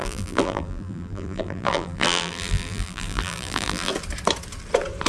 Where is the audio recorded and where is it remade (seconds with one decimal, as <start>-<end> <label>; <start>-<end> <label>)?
0.0-3.9 remade; 3.9-5.1 recorded